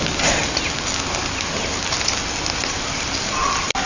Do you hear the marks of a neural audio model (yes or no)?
no